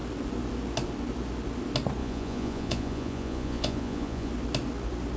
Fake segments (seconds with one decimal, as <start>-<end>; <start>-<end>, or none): 2.0-4.3